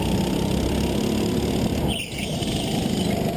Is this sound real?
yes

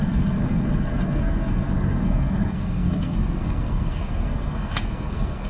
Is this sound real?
no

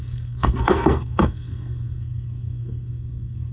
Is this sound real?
no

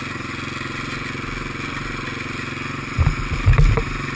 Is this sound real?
yes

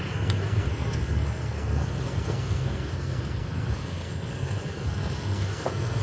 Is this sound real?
no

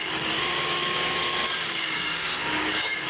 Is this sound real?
no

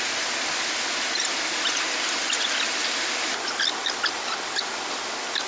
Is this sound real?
yes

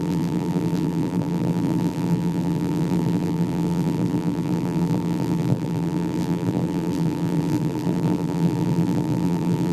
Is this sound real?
no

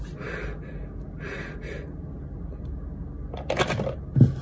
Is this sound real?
yes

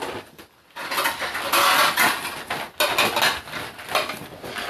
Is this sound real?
yes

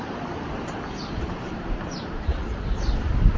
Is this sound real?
no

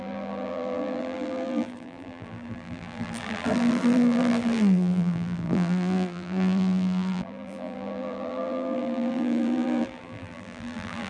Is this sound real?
no